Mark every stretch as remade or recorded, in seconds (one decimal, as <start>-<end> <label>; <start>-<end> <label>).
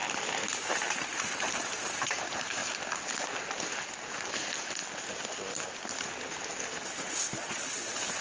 0.0-0.7 recorded; 0.7-2.6 remade; 2.6-4.0 recorded; 4.0-4.8 remade; 4.8-8.2 recorded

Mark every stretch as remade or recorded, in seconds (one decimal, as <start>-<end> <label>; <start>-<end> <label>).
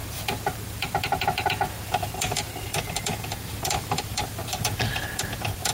0.0-5.7 remade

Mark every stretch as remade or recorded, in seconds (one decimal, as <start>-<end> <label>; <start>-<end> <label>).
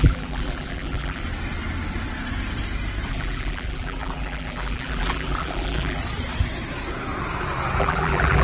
0.0-1.2 remade; 1.2-3.1 recorded; 3.1-6.0 remade; 6.0-7.8 recorded; 7.8-8.4 remade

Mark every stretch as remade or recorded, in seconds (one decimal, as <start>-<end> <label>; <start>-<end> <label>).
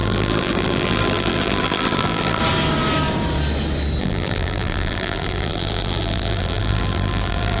0.0-2.4 remade; 2.4-4.0 recorded; 4.0-7.6 remade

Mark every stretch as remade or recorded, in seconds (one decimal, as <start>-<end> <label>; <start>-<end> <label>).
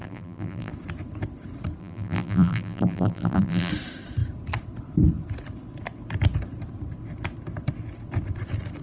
0.0-0.7 remade; 0.7-1.8 recorded; 1.8-3.7 remade; 3.7-8.8 recorded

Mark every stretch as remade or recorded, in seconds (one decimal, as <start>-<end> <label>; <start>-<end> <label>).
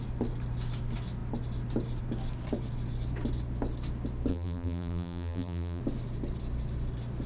0.0-4.3 recorded; 4.3-5.8 remade; 5.8-7.3 recorded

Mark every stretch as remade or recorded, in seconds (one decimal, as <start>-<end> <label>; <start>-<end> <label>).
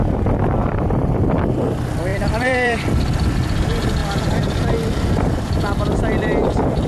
0.0-0.6 recorded; 0.6-1.4 remade; 1.4-2.1 recorded; 2.1-3.2 remade; 3.2-6.9 recorded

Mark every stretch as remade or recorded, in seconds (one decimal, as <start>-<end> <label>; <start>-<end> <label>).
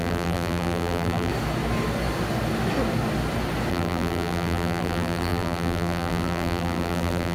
0.0-1.3 remade; 1.3-3.7 recorded; 3.7-7.3 remade